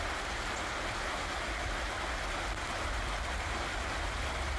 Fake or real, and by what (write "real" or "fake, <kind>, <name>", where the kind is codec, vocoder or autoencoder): real